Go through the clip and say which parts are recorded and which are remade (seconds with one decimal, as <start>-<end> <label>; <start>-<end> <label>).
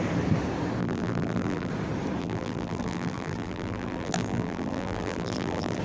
0.0-0.8 recorded; 0.8-1.7 remade; 1.7-2.2 recorded; 2.2-5.8 remade